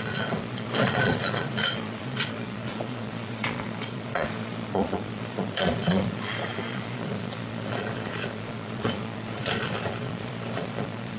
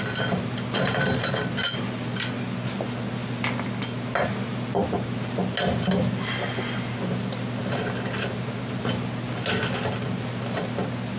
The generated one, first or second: first